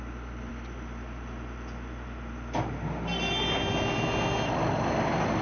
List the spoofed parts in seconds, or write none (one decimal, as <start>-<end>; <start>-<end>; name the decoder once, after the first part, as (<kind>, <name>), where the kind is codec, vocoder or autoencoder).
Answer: none